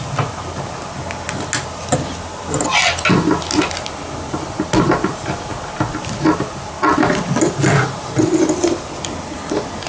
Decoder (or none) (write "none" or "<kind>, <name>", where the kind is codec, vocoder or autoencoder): none